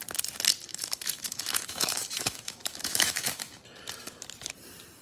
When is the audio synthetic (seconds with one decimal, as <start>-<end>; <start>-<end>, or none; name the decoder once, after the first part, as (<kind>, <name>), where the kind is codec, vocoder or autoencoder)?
0.7-3.6 (autoencoder, DAC-VAE)